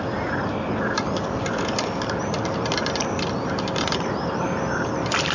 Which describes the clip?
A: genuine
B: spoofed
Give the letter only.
A